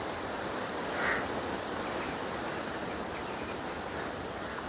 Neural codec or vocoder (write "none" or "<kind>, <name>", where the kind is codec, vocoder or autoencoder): none